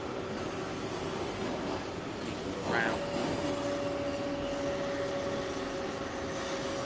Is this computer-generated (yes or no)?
no